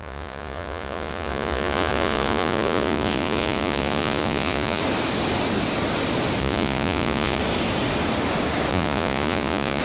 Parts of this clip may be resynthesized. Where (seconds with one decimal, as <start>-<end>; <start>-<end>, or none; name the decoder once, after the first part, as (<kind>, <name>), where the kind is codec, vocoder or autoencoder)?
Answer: 0.0-4.8 (vocoder, Vocos); 6.4-7.4; 8.7-9.8